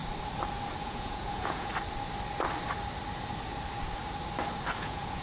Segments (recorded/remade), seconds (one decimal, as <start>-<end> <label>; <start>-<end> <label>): 0.0-0.8 recorded; 0.8-1.7 remade; 1.7-4.8 recorded; 4.8-5.2 remade

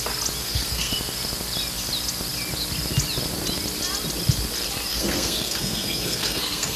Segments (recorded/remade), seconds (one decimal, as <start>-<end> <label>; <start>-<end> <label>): 0.0-0.4 recorded; 0.4-0.9 remade; 0.9-4.9 recorded; 4.9-6.8 remade

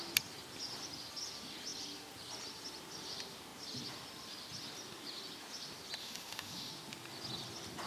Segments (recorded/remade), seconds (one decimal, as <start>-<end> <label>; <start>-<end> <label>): 0.0-6.0 recorded; 6.0-6.7 remade; 6.7-7.9 recorded

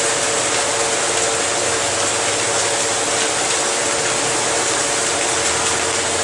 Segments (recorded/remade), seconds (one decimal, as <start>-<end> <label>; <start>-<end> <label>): 0.0-6.2 recorded

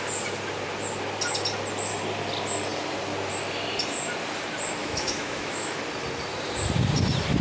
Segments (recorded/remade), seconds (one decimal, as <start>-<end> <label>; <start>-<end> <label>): 0.0-4.8 recorded; 4.8-5.8 remade; 5.8-7.4 recorded

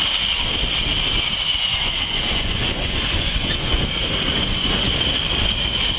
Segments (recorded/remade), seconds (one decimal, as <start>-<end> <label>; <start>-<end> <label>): 0.0-1.7 recorded; 1.7-3.8 remade; 3.8-4.3 recorded; 4.3-4.9 remade; 4.9-6.0 recorded

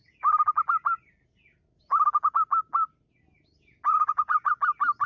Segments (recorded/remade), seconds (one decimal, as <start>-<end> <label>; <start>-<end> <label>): 0.0-3.9 recorded; 3.9-4.5 remade; 4.5-5.1 recorded